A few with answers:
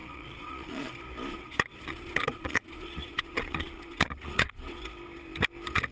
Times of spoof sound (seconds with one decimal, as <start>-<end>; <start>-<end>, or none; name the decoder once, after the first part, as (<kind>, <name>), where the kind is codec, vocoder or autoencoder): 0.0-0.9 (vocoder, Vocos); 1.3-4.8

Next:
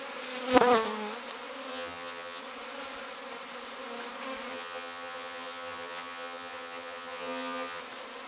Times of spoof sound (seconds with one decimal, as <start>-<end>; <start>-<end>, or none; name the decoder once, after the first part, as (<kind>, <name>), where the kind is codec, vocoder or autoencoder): 1.7-2.4 (vocoder, HiFi-GAN); 4.5-7.8

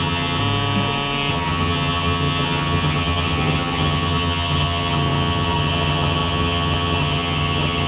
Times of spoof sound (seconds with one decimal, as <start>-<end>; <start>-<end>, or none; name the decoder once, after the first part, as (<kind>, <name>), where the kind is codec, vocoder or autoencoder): 0.0-0.4 (vocoder, HiFi-GAN); 1.3-7.9

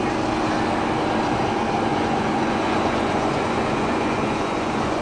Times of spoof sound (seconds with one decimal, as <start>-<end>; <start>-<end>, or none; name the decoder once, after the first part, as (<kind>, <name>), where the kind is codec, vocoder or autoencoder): 1.9-5.0 (vocoder, Vocos)